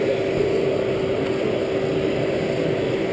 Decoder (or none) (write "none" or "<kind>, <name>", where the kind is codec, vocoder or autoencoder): none